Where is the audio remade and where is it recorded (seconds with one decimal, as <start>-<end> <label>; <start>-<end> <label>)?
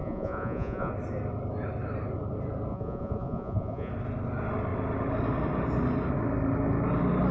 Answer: 0.0-0.9 remade; 0.9-2.7 recorded; 2.7-3.9 remade; 3.9-7.3 recorded